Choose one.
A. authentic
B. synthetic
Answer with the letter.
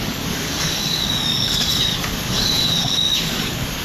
B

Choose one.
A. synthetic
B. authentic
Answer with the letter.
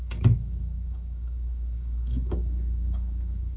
A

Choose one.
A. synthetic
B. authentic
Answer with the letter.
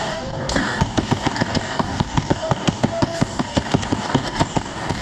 A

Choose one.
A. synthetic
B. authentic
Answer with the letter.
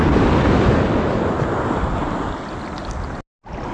B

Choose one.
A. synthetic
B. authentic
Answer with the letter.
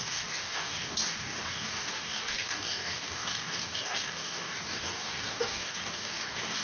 A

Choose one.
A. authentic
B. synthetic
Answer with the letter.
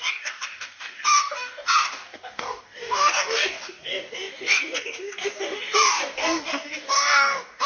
B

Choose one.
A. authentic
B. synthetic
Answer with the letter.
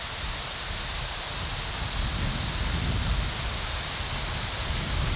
A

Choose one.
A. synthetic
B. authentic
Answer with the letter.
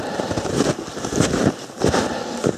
B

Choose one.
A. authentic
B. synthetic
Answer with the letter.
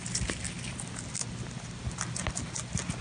A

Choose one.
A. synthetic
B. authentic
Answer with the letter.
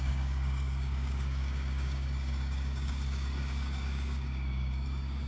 A